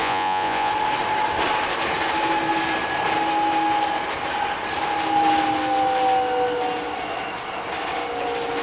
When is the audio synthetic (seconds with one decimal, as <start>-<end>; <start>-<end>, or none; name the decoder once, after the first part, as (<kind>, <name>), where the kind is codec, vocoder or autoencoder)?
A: 0.0-0.7 (vocoder, Vocos)